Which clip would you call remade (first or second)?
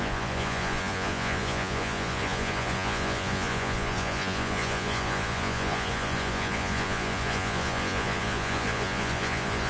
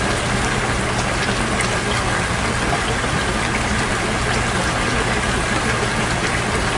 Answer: first